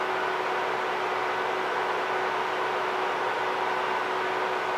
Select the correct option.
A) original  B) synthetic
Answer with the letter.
A